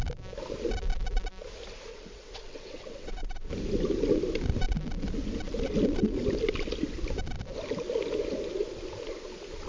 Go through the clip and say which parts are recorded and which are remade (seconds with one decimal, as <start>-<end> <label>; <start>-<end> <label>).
0.0-1.9 recorded; 1.9-3.5 remade; 3.5-9.7 recorded